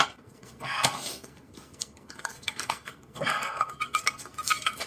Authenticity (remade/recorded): remade